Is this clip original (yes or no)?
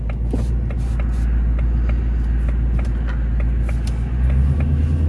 yes